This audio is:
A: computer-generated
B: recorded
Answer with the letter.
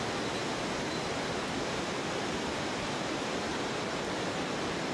A